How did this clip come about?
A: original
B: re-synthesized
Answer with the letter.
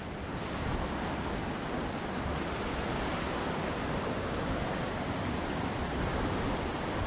A